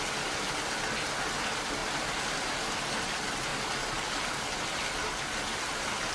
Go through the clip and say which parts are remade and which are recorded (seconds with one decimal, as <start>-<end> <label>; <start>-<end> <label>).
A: 0.0-6.1 recorded